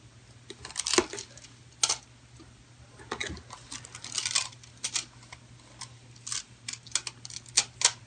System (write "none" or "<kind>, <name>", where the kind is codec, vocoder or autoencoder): none